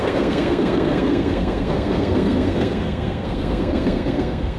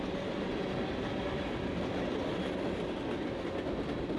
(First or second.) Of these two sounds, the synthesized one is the first